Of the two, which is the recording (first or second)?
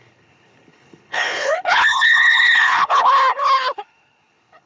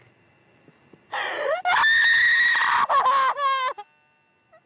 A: second